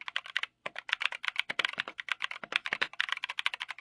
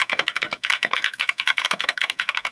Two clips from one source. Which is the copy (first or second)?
second